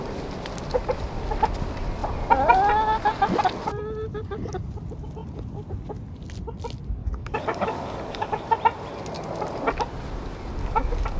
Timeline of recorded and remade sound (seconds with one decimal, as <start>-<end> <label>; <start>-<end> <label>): 0.0-7.0 recorded; 7.0-8.4 remade; 8.4-10.6 recorded; 10.6-11.2 remade